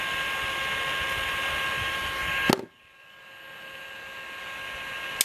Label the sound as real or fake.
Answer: real